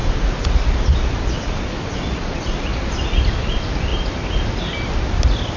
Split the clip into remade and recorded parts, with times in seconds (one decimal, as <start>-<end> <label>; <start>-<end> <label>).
0.0-5.6 recorded